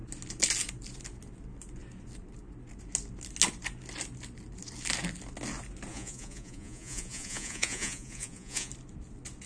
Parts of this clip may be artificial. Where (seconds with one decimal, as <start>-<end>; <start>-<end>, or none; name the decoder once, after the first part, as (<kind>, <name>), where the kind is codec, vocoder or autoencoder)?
5.9-8.7 (vocoder, Vocos)